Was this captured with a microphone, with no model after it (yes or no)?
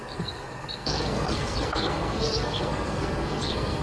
no